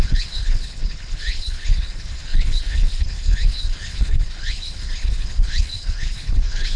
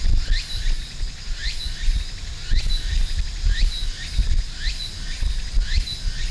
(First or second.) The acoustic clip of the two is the second